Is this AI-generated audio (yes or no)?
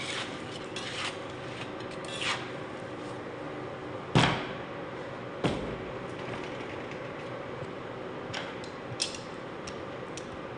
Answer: no